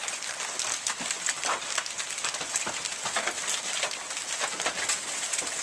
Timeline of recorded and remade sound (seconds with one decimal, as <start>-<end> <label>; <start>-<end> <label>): 0.0-5.6 recorded